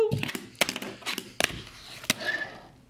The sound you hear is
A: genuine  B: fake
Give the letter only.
A